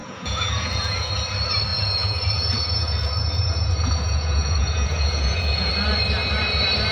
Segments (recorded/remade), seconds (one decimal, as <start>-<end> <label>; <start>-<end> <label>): 0.0-1.1 remade; 1.1-1.7 recorded; 1.7-5.7 remade; 5.7-6.9 recorded